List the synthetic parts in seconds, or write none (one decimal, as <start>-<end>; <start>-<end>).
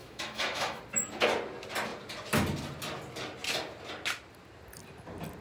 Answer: 0.0-0.8